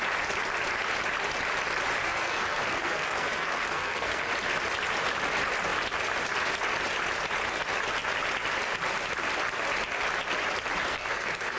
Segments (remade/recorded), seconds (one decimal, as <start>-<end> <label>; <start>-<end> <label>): 0.0-2.0 recorded; 2.0-4.3 remade; 4.3-10.9 recorded; 10.9-11.6 remade